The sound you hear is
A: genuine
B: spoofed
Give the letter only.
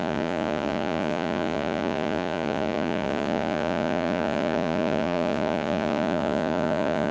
B